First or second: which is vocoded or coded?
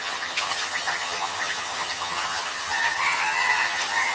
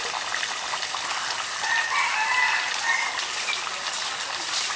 first